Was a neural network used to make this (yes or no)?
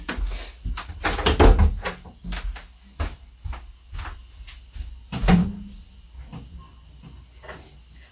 no